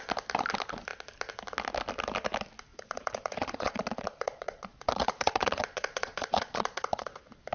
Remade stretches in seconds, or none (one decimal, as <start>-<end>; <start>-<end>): 2.7-7.5